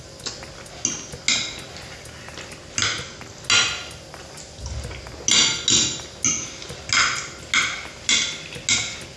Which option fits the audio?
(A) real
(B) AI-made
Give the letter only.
A